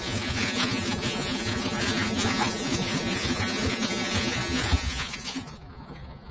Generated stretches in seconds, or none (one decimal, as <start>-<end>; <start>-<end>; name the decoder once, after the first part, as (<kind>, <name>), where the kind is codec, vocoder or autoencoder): 0.0-6.3 (vocoder, Vocos)